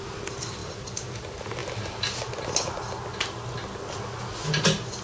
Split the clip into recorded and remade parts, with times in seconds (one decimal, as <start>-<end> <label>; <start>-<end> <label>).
0.0-0.6 recorded; 0.6-1.1 remade; 1.1-5.0 recorded